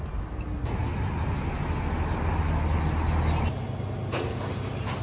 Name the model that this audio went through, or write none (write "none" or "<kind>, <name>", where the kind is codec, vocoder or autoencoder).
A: none